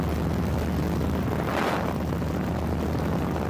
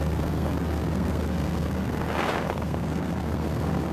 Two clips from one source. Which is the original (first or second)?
first